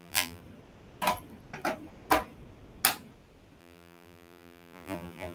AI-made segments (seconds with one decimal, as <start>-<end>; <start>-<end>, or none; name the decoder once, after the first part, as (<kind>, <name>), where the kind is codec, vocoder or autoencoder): 0.0-0.4 (vocoder, BigVGAN v2); 3.6-5.3